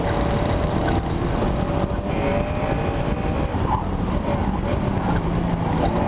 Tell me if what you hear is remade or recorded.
recorded